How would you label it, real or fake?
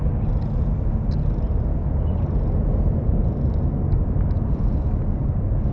real